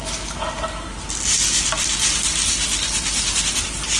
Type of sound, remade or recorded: recorded